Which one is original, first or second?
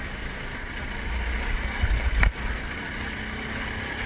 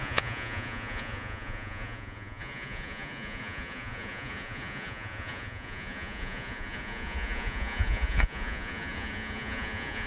first